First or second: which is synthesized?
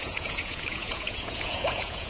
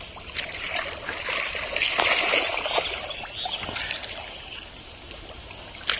first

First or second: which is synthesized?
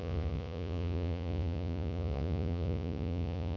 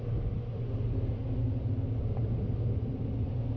first